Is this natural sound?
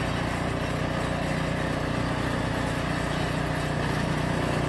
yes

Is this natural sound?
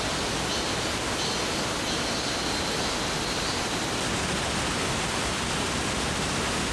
yes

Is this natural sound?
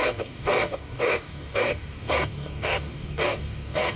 no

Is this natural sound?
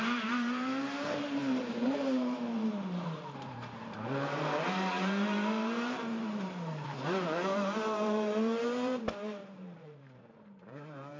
no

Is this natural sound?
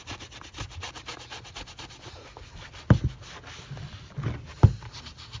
yes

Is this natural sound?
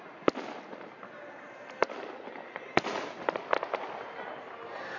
yes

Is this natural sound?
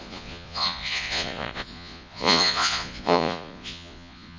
no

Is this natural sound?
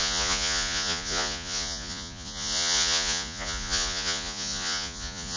no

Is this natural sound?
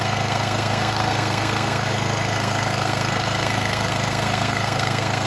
no